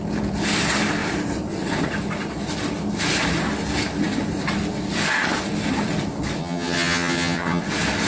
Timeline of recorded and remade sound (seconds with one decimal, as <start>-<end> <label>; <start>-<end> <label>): 0.0-6.4 recorded; 6.4-7.6 remade; 7.6-8.1 recorded